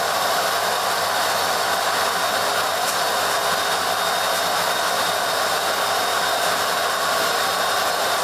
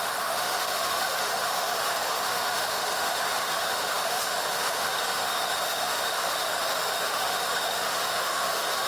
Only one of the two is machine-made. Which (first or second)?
second